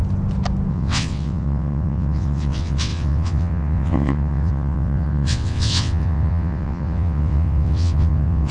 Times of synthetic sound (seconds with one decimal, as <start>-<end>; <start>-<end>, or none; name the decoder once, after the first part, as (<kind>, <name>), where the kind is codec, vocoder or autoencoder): 0.7-8.5 (vocoder, WaveNeXt)